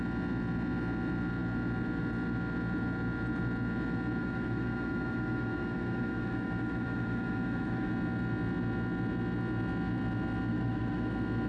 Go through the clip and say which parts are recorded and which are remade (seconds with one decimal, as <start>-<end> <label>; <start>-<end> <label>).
0.0-4.2 recorded; 4.2-7.9 remade; 7.9-10.5 recorded; 10.5-11.1 remade; 11.1-11.5 recorded